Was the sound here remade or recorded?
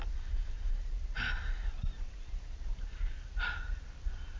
recorded